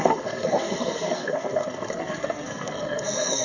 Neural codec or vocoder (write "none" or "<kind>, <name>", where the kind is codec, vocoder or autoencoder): codec, SNAC